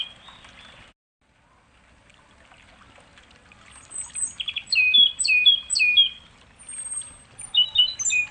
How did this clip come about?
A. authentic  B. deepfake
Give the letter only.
A